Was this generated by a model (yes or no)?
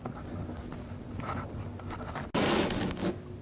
no